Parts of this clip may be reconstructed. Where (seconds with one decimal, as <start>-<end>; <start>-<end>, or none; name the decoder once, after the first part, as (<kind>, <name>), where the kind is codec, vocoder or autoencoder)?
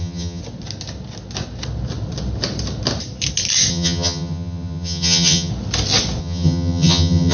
0.0-0.4 (vocoder, HiFi-GAN); 3.7-5.5; 6.2-7.3